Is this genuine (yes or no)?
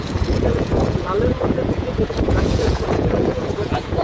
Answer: no